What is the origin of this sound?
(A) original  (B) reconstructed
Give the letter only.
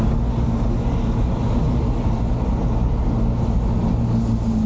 A